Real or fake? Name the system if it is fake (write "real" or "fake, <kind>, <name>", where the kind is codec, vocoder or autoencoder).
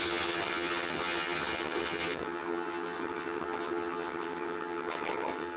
fake, vocoder, HiFi-GAN